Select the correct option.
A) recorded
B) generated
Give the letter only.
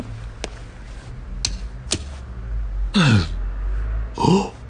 A